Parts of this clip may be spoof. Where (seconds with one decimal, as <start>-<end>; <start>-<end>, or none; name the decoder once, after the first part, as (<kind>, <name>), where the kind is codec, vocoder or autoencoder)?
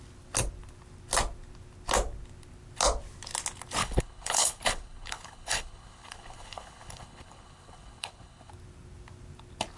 3.8-8.5 (codec, HILCodec)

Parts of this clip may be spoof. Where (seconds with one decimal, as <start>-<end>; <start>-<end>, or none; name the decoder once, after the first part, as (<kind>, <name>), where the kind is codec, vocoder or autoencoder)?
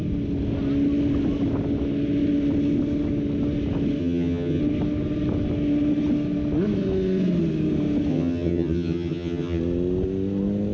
4.0-4.6 (vocoder, HiFi-GAN); 8.1-9.6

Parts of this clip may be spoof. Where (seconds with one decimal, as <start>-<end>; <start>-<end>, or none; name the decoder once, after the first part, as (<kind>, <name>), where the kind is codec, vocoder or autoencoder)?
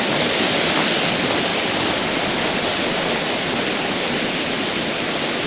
none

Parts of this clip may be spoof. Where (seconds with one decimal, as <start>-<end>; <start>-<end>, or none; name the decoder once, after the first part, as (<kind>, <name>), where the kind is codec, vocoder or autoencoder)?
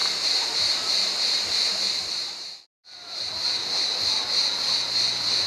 0.0-3.3 (vocoder, BigVGAN v2)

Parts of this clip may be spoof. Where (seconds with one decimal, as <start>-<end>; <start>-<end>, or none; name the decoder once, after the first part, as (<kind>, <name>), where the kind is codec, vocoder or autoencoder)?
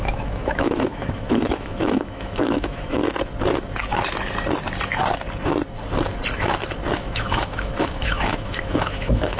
0.0-3.0 (autoencoder, DAC-VAE); 7.0-9.4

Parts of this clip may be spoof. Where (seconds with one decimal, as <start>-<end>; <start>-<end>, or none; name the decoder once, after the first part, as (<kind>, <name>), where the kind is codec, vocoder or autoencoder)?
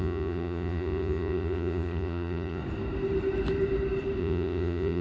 0.0-2.6 (vocoder, Vocos); 4.2-5.0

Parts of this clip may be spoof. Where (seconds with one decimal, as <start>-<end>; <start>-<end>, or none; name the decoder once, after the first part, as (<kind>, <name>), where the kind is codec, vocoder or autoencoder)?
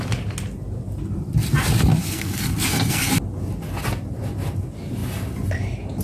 2.0-3.1 (codec, SNAC)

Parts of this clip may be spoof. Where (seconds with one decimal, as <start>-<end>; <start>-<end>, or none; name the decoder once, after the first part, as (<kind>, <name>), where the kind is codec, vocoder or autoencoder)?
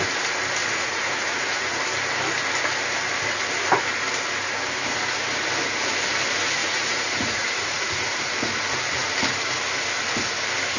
0.6-1.8 (vocoder, Vocos); 6.6-8.2